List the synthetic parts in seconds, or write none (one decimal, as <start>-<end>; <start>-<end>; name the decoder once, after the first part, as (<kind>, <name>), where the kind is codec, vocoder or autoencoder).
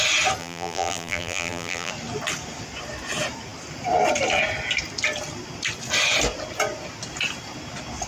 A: 0.4-1.9 (vocoder, BigVGAN v2)